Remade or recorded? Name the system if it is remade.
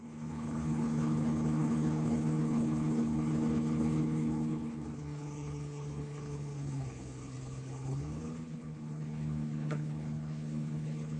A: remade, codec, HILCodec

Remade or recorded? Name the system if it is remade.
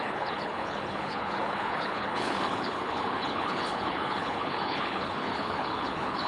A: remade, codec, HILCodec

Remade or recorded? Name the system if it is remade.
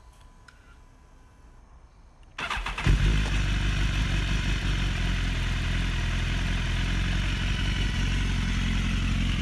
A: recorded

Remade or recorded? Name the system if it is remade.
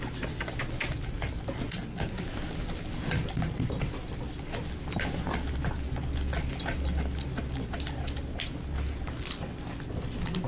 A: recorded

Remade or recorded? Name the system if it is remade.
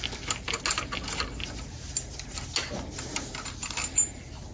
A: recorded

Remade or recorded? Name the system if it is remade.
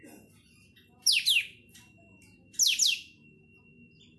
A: recorded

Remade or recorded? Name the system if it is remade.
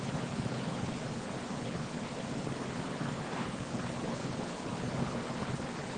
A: remade, codec, HILCodec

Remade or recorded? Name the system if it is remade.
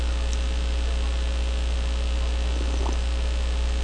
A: recorded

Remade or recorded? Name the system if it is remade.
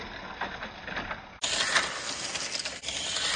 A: recorded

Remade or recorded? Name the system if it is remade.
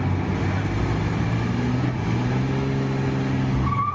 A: recorded